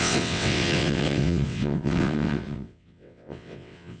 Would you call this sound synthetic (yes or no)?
yes